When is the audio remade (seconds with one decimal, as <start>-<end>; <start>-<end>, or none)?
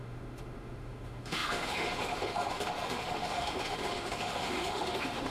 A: 0.0-5.3